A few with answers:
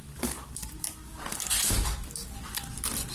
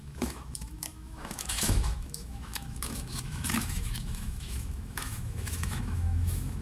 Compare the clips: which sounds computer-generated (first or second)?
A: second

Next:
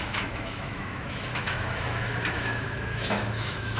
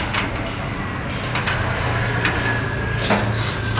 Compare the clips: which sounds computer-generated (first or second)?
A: first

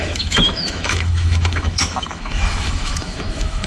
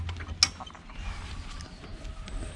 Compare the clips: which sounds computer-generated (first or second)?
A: first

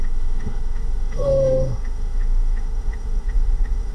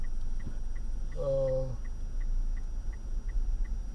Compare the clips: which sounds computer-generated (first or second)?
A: first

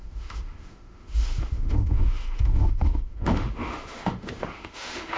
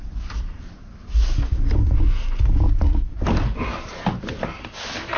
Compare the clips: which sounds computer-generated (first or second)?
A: first